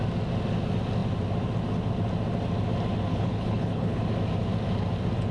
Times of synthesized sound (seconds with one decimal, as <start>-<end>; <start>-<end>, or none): 3.1-4.0